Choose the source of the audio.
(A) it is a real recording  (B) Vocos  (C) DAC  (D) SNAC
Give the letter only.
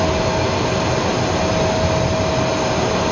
A